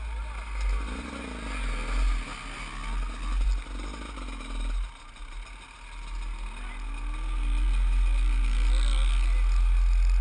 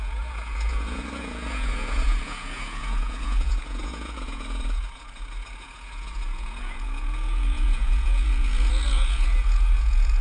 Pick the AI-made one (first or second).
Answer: second